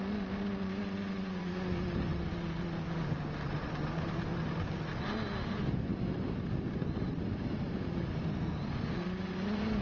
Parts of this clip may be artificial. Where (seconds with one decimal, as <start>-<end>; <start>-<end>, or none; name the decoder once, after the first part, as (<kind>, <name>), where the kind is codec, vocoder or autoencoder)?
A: none